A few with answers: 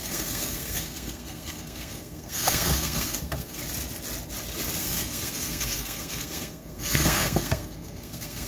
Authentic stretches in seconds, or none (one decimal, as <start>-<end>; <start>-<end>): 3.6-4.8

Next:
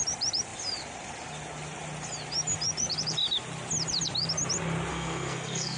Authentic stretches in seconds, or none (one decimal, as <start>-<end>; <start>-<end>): 0.0-4.9

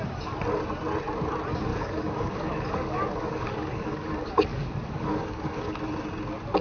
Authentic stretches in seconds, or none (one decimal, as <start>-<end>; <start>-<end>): 0.0-1.7; 5.7-6.6

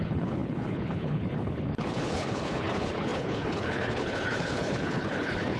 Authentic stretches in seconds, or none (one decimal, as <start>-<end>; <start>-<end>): none

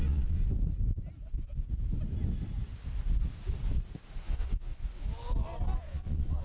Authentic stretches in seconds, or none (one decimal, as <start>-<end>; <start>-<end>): 0.4-4.2; 4.7-5.8